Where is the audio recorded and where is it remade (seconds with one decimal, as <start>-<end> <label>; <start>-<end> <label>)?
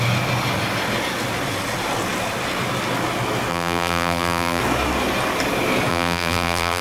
0.0-3.5 recorded; 3.5-4.6 remade; 4.6-5.9 recorded; 5.9-6.8 remade